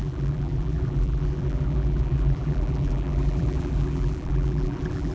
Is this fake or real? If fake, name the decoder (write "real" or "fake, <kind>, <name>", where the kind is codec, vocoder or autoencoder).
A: fake, vocoder, BigVGAN v2